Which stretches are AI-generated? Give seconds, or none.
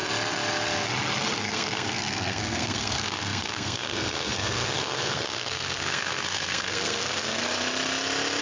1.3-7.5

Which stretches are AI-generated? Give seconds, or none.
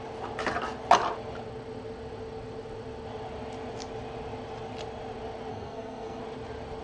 5.5-6.2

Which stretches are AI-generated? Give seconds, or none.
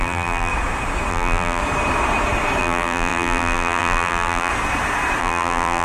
0.0-0.5; 1.1-1.6; 2.6-4.5; 5.2-5.8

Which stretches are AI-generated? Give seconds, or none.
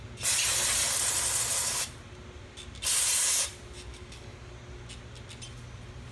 3.9-4.5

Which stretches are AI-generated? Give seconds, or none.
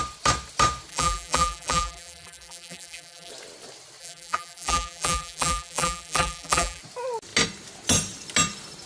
0.9-3.3; 4.0-6.8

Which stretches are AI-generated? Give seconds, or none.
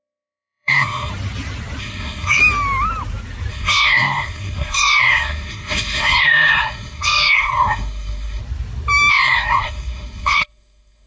0.0-1.1; 1.8-2.4; 3.5-8.4; 9.1-11.1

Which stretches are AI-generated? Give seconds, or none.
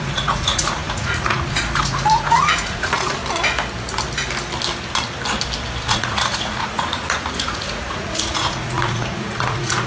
0.0-3.2; 5.9-9.9